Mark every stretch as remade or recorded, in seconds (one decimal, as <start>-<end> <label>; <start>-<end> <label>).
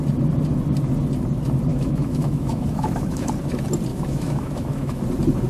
0.0-1.7 recorded; 1.7-3.3 remade; 3.3-3.9 recorded; 3.9-5.0 remade; 5.0-5.5 recorded